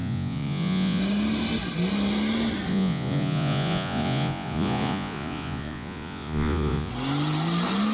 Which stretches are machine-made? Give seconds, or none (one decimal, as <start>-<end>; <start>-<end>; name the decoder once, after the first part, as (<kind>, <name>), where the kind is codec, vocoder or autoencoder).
0.0-1.0 (vocoder, Vocos); 2.7-6.9